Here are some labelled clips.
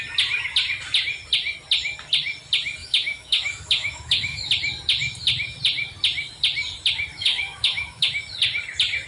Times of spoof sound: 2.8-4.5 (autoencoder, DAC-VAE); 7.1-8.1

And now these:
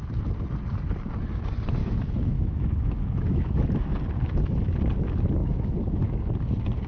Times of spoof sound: 1.8-4.0 (autoencoder, DAC-VAE); 5.4-6.3

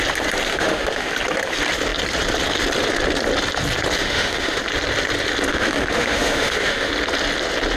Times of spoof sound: 0.5-1.1 (autoencoder, DAC-VAE); 4.0-4.6; 5.5-6.9

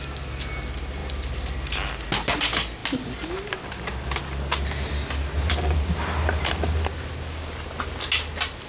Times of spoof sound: none

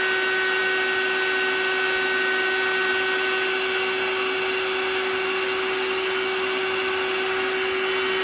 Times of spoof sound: none